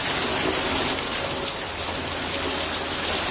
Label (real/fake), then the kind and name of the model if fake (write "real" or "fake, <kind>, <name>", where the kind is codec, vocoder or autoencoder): real